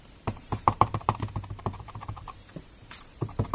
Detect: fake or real fake